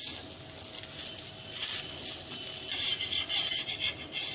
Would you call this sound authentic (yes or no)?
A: yes